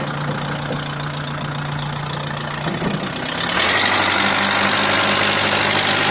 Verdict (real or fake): real